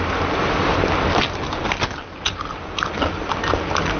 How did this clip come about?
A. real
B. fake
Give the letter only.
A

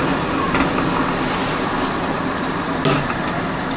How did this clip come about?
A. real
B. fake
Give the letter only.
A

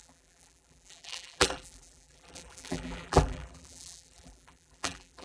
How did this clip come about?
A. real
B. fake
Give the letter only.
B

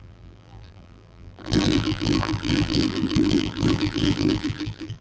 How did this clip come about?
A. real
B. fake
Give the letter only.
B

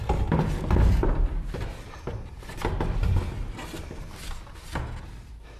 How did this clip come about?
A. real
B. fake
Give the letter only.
A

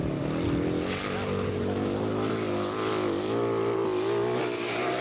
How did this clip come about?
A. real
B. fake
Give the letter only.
A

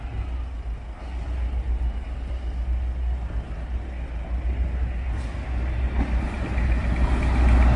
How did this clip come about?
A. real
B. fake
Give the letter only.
A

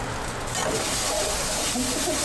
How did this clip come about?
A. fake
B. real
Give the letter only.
B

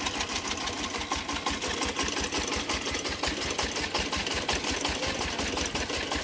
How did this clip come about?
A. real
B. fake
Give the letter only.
A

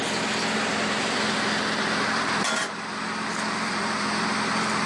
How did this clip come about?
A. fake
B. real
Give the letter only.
A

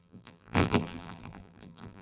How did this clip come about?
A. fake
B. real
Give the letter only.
A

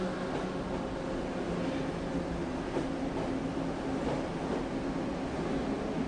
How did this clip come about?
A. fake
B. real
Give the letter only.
B